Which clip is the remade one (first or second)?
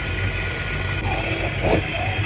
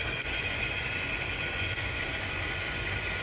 second